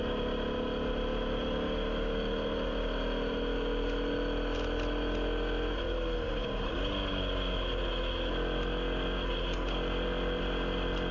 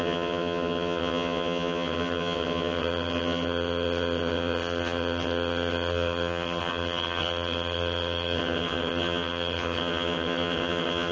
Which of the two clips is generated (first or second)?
second